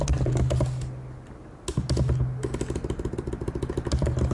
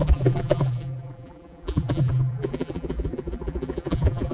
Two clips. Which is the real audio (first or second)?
first